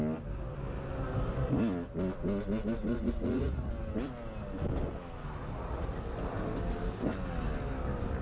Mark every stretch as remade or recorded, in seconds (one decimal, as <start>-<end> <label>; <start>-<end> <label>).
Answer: 0.0-2.8 recorded; 2.8-3.7 remade; 3.7-5.4 recorded; 5.4-6.0 remade; 6.0-8.2 recorded